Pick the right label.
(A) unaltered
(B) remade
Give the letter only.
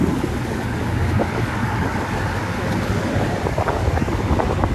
B